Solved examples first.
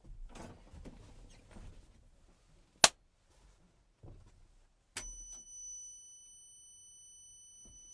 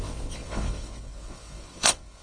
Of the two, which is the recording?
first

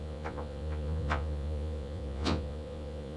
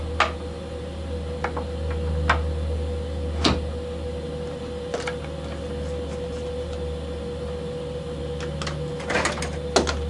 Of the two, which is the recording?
second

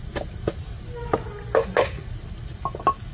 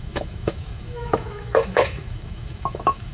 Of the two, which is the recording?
first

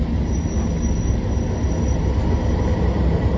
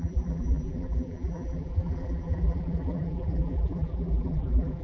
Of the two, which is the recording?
first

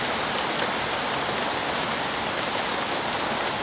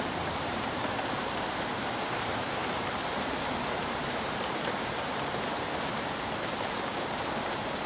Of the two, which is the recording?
first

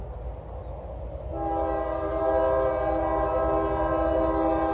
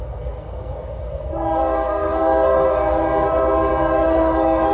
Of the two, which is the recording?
first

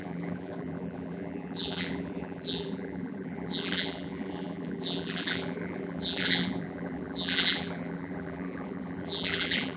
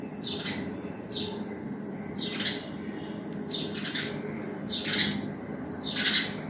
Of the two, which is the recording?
second